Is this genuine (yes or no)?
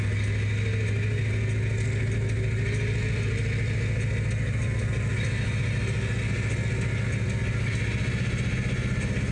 yes